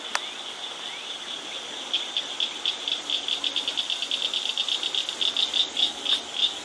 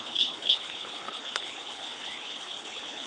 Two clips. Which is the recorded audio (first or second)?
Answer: first